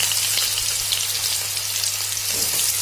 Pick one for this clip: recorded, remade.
recorded